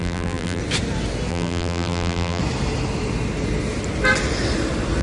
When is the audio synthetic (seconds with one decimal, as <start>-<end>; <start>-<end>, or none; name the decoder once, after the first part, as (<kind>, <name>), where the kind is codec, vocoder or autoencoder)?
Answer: 0.0-0.6 (vocoder, BigVGAN v2); 1.3-2.4